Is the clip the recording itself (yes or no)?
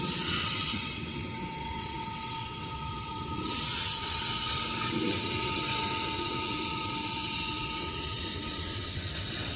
no